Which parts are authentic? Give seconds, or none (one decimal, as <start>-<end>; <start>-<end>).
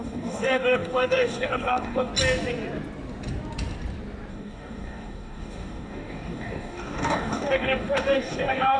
2.1-4.3